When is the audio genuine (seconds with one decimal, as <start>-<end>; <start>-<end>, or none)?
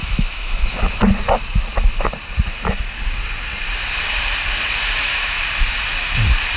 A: 0.8-2.5; 3.0-4.8; 5.4-6.6